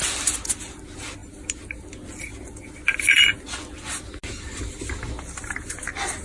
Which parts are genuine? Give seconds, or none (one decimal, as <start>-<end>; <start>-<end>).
0.0-6.2